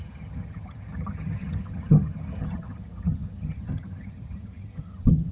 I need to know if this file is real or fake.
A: fake